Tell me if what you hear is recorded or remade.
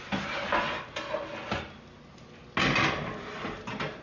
recorded